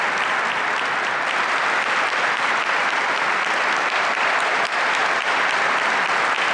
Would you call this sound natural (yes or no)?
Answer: no